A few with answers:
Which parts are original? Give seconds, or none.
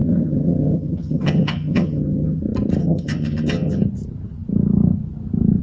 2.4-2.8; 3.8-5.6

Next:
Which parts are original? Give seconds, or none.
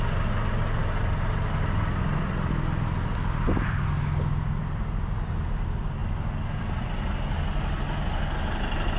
0.0-9.0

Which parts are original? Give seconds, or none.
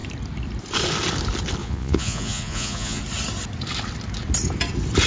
0.0-1.6; 3.0-5.1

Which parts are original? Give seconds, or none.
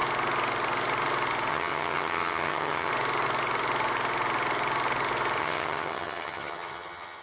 0.0-1.5; 2.9-5.4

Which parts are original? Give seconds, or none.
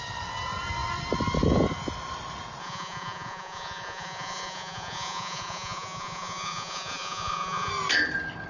0.0-2.6; 7.7-8.5